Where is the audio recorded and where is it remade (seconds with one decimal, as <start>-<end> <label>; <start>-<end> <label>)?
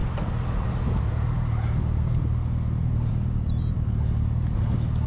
0.0-5.1 recorded